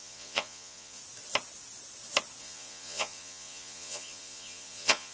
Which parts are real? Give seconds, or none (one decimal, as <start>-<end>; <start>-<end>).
1.0-2.4